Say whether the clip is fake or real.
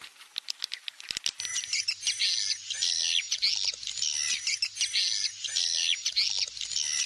real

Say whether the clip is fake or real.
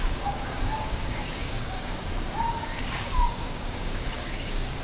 fake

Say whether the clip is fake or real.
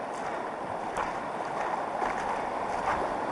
real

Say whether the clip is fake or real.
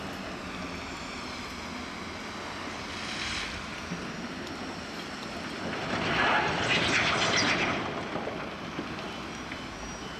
real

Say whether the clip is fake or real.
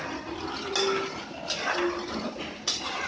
real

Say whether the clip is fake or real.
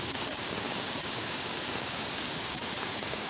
fake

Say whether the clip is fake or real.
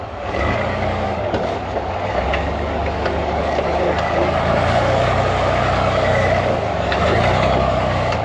fake